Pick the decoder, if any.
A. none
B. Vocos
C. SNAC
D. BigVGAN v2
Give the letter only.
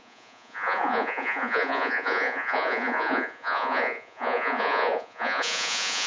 B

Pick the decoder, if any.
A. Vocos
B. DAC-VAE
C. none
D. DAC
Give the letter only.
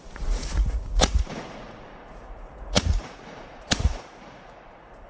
A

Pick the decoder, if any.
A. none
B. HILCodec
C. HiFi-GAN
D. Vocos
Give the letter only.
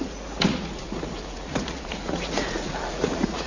D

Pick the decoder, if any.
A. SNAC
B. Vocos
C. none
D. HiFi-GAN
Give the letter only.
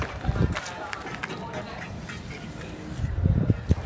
C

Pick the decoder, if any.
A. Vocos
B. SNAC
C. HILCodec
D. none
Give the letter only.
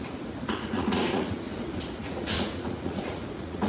A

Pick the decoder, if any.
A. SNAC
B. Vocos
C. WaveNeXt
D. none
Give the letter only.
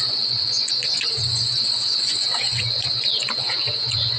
B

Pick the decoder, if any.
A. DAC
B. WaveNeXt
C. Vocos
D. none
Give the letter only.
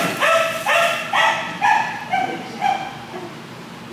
D